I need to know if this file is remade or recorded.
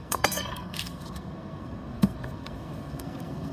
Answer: remade